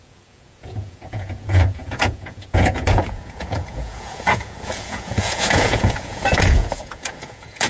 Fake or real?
fake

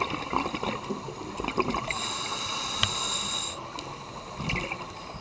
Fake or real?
real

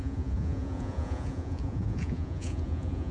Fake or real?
fake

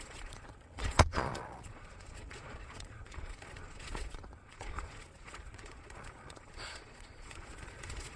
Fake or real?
fake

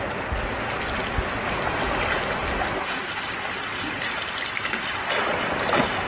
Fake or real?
real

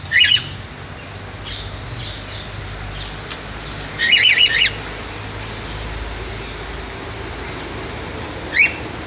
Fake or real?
real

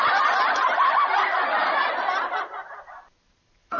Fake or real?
real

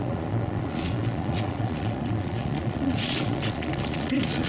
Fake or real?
fake